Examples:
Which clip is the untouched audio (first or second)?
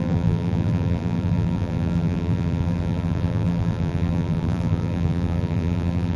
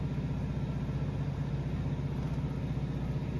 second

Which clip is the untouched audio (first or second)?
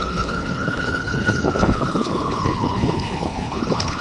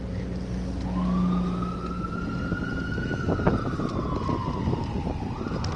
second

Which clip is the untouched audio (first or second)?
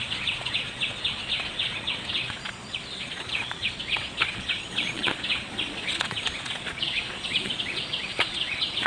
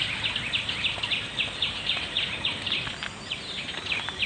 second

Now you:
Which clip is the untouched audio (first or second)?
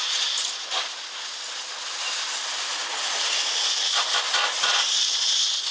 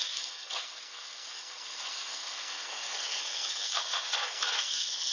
first